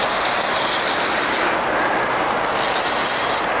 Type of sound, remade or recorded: recorded